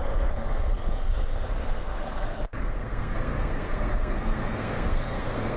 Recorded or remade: remade